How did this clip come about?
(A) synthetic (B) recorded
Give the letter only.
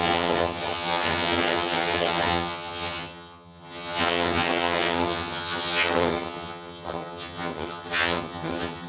A